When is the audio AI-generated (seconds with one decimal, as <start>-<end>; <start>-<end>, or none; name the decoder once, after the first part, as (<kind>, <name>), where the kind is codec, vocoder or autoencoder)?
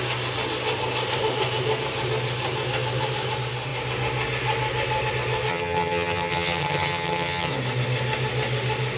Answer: 5.5-7.5 (vocoder, HiFi-GAN)